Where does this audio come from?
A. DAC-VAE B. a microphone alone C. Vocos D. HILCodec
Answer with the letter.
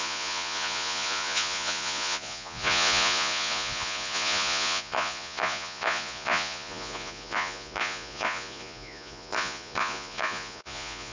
C